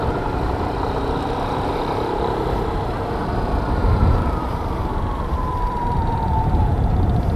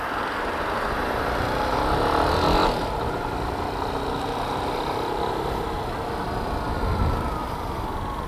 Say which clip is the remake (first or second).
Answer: first